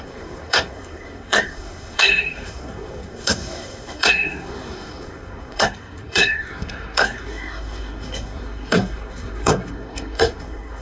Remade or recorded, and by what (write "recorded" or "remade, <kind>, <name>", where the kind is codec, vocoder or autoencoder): remade, codec, SNAC